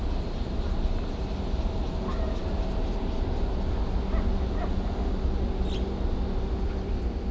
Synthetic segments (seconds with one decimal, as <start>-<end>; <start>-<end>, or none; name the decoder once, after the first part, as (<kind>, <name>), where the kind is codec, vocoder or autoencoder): none